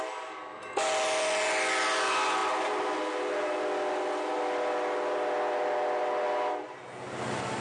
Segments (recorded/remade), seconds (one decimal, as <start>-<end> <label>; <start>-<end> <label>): 0.0-7.6 recorded